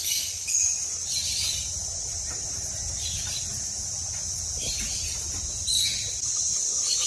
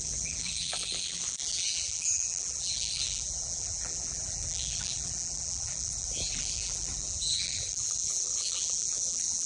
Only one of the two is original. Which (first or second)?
first